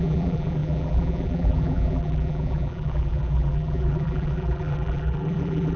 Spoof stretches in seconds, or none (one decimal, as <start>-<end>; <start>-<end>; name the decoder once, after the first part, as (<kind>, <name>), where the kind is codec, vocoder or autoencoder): 0.0-5.8 (vocoder, BigVGAN v2)